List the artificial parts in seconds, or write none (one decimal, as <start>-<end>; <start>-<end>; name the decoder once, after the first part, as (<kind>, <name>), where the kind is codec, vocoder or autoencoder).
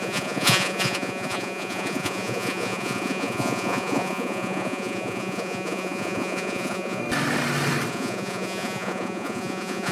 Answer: 0.0-7.0 (vocoder, Vocos); 7.9-9.9